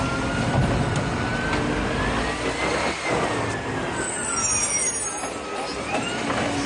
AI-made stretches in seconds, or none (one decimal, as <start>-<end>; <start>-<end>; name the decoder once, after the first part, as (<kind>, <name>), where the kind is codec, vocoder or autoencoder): none